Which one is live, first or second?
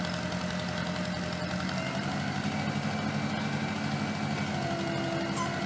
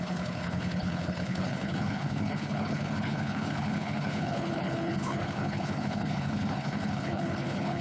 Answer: first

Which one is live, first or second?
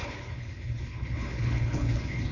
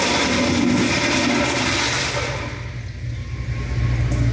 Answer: second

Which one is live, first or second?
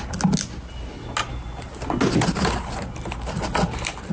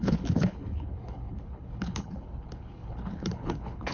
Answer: first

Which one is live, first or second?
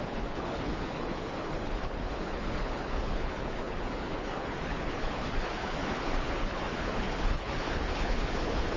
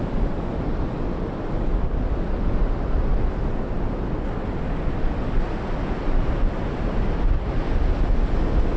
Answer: second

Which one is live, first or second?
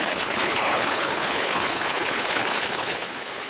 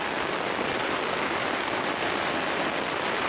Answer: second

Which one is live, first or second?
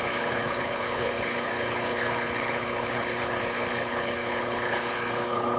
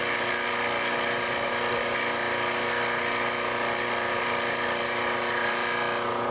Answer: second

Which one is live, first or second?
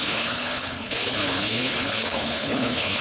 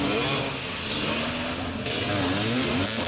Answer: second